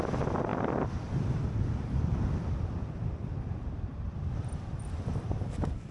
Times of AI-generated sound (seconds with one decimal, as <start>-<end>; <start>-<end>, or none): none